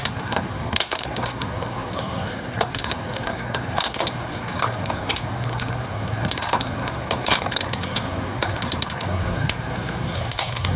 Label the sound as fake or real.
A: fake